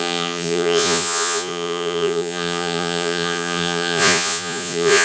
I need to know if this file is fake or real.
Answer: fake